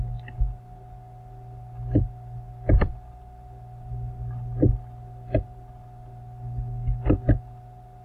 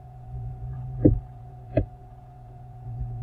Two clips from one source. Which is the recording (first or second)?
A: first